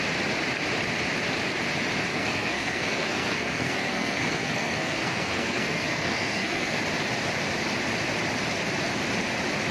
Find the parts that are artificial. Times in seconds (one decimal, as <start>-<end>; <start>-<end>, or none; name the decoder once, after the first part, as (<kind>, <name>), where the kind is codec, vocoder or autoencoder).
2.1-6.8 (codec, SNAC)